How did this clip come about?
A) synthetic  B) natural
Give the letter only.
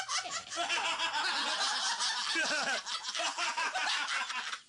B